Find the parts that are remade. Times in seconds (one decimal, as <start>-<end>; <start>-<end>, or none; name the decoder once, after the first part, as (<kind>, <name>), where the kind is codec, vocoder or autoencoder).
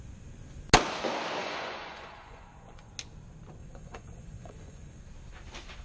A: 1.4-2.9 (vocoder, Vocos); 3.6-5.0